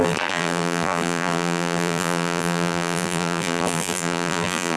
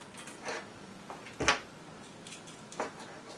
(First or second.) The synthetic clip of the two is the first